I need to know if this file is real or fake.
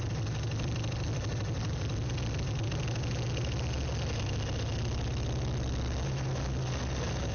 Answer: real